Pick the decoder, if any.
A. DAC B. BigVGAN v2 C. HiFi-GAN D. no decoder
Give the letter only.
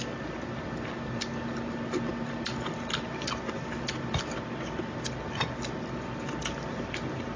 D